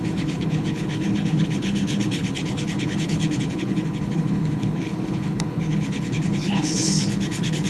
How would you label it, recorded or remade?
remade